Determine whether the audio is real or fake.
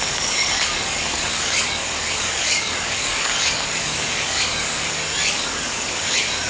fake